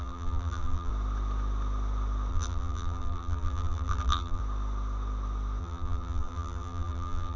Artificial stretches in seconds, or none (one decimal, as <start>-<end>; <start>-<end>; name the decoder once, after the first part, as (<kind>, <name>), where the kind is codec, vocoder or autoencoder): 0.0-0.9 (vocoder, BigVGAN v2); 2.3-4.4; 5.6-7.4